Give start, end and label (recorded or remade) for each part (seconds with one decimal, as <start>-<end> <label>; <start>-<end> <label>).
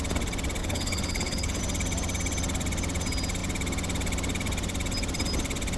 0.0-0.6 recorded; 0.6-1.6 remade; 1.6-5.8 recorded